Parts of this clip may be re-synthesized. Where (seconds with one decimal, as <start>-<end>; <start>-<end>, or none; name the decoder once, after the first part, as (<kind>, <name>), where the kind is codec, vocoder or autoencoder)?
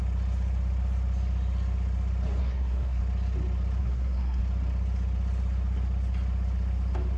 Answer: 2.4-3.0 (codec, SNAC); 3.8-4.4